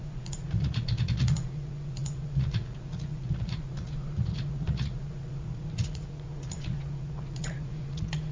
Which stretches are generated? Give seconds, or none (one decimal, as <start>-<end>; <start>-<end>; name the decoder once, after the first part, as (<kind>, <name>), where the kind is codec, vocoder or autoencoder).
0.0-8.3 (vocoder, Vocos)